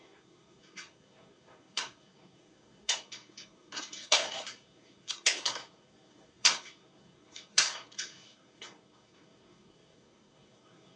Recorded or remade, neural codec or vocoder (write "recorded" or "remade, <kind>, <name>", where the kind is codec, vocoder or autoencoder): remade, codec, SNAC